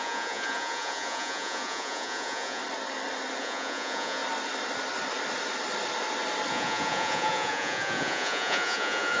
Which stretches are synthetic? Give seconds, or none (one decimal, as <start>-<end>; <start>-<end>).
0.0-2.6; 3.4-4.2; 6.5-9.2